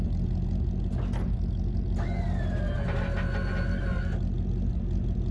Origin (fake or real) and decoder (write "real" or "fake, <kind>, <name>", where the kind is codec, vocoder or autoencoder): real